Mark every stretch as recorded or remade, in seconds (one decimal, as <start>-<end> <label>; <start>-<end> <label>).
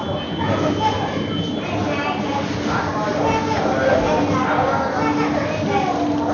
0.0-6.3 recorded